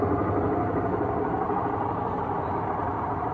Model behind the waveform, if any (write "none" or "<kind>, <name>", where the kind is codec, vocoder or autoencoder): none